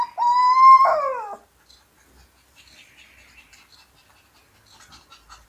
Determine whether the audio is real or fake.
real